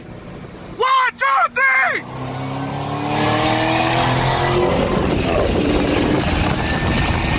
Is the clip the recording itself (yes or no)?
yes